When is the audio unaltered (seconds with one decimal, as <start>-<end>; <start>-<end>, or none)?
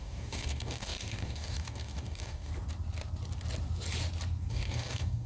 2.5-4.5